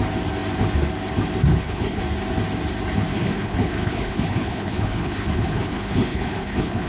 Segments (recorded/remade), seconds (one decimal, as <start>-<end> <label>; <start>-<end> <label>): 0.0-1.5 recorded; 1.5-2.0 remade; 2.0-3.1 recorded; 3.1-6.9 remade